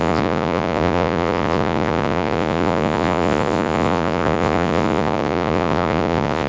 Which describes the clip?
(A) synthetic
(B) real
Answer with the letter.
A